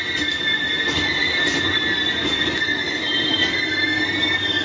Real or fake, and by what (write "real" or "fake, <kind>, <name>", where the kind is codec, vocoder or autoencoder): real